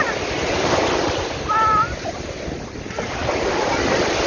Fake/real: real